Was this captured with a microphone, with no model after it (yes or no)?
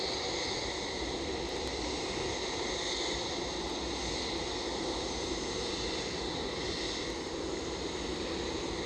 yes